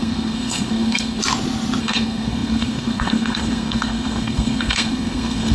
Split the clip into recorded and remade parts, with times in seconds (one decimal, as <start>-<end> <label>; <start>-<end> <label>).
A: 0.0-1.2 remade; 1.2-1.8 recorded; 1.8-5.5 remade